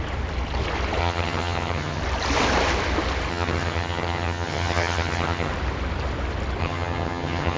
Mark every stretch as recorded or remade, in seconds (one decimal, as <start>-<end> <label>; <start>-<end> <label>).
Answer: 0.0-1.0 recorded; 1.0-2.0 remade; 2.0-3.3 recorded; 3.3-5.5 remade; 5.5-6.6 recorded; 6.6-7.6 remade